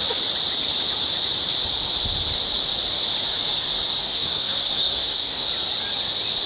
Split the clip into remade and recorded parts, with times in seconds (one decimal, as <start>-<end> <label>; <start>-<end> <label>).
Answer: 0.0-4.0 recorded; 4.0-5.5 remade; 5.5-6.5 recorded